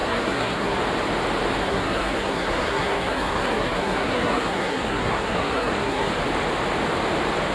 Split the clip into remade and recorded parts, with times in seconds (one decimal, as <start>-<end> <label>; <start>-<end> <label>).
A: 0.0-0.8 remade; 0.8-1.6 recorded; 1.6-6.1 remade; 6.1-7.5 recorded